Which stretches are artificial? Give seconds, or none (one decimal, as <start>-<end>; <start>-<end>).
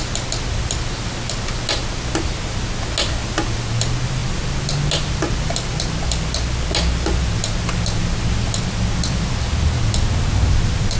none